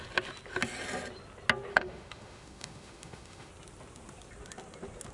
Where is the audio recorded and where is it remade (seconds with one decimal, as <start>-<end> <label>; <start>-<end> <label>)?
0.0-1.7 recorded; 1.7-3.5 remade; 3.5-5.1 recorded